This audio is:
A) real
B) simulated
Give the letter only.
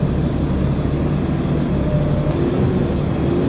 A